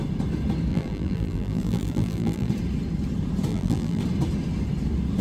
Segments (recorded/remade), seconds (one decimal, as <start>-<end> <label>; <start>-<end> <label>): 0.0-0.7 recorded; 0.7-2.5 remade; 2.5-3.5 recorded; 3.5-4.0 remade; 4.0-5.2 recorded